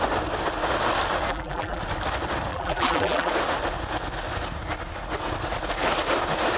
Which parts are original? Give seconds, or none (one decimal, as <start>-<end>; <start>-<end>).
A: 0.0-1.3; 1.8-2.5; 3.3-6.6